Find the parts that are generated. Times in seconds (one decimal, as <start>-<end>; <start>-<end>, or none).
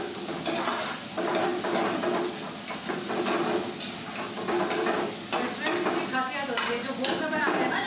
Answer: none